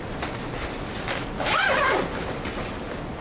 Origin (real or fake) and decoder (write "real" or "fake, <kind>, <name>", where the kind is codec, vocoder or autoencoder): real